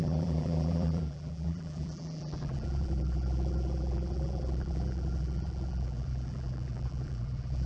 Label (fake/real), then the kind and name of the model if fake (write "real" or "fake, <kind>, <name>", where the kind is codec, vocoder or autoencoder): fake, vocoder, BigVGAN v2